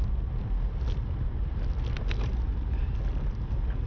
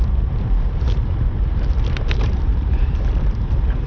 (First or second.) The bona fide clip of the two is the first